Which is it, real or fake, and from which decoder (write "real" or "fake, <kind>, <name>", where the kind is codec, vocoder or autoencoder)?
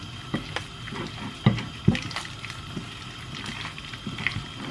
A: real